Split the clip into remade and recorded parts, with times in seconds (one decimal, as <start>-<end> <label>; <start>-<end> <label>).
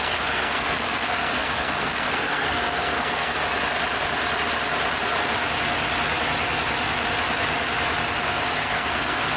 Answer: 0.0-3.4 remade; 3.4-8.6 recorded; 8.6-9.4 remade